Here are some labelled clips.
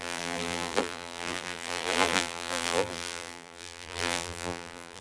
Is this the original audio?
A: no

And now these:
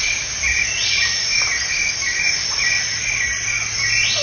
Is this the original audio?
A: yes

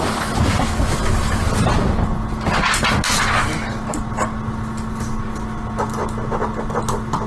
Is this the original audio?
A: yes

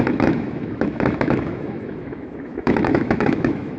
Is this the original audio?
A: no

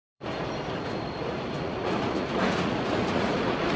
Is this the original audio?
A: no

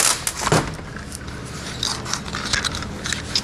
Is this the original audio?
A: yes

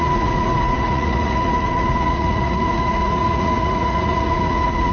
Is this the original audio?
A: no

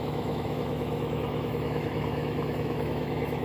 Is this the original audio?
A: no